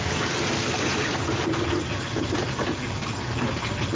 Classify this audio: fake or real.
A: real